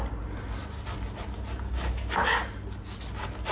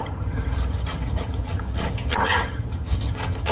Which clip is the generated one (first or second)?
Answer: second